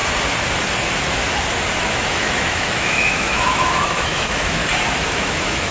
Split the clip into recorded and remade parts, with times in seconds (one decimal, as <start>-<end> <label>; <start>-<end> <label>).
0.0-1.8 recorded; 1.8-4.6 remade; 4.6-5.1 recorded; 5.1-5.7 remade